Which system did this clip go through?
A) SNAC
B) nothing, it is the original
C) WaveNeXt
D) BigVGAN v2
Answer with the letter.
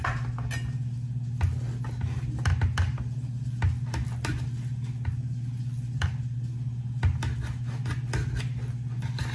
B